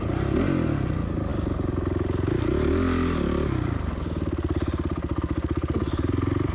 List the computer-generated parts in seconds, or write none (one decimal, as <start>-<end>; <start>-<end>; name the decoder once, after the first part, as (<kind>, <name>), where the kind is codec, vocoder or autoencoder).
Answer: none